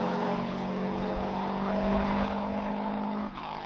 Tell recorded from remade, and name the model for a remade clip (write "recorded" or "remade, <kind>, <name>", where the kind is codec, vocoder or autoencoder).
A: remade, codec, HILCodec